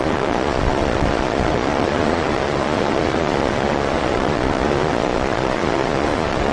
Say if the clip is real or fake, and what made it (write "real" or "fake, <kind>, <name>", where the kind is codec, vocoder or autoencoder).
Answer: fake, vocoder, Vocos